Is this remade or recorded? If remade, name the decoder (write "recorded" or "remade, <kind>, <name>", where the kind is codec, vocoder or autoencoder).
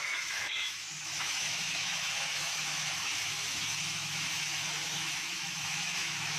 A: remade, autoencoder, DAC-VAE